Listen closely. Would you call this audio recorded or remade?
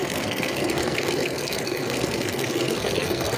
remade